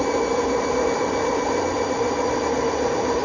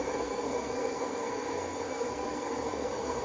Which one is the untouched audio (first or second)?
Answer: first